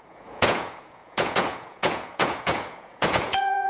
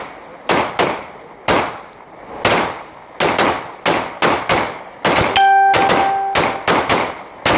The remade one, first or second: first